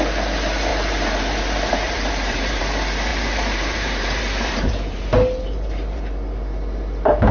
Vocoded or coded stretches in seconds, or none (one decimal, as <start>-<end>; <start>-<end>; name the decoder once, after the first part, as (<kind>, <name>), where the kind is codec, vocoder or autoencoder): 0.7-2.6 (vocoder, BigVGAN v2); 3.1-6.0